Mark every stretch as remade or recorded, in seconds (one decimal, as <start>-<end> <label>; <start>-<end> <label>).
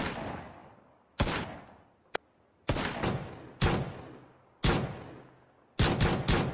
0.0-6.5 recorded